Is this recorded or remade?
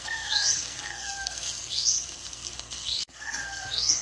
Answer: remade